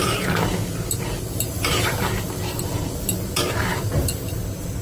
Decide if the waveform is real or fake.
real